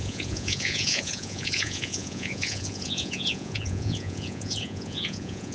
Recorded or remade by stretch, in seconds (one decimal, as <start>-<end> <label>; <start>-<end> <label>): 0.0-5.5 remade